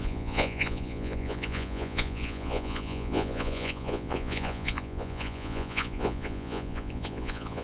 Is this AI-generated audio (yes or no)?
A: yes